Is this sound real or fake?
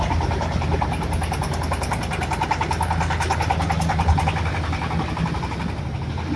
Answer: real